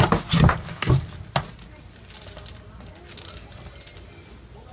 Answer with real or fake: real